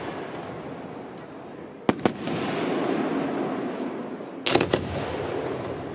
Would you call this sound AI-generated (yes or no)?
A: no